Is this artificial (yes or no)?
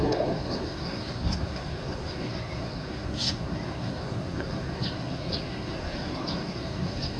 yes